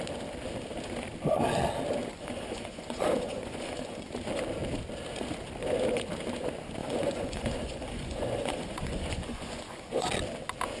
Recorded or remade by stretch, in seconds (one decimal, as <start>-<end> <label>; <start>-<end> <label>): 0.0-2.1 recorded; 2.1-4.1 remade; 4.1-6.8 recorded; 6.8-10.1 remade; 10.1-10.8 recorded